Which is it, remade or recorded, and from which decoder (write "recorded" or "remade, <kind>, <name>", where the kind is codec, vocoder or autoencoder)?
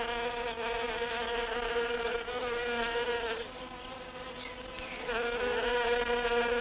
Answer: recorded